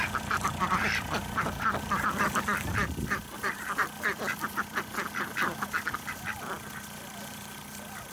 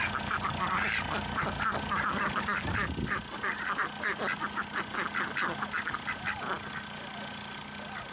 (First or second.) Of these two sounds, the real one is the second